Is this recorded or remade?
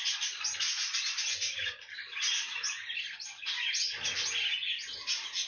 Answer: recorded